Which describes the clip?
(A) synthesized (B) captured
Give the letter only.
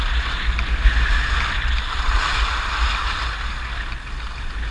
B